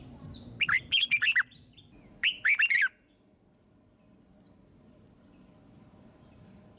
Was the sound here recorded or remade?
recorded